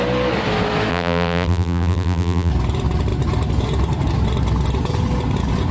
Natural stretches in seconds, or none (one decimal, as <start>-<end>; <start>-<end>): 0.0-0.9; 2.5-5.7